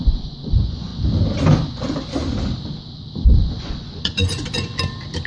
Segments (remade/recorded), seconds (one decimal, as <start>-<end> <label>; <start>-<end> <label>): 0.0-0.9 remade; 0.9-3.6 recorded; 3.6-4.7 remade; 4.7-5.3 recorded